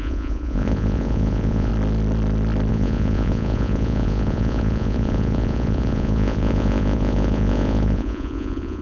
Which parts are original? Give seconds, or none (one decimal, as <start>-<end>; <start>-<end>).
1.7-2.7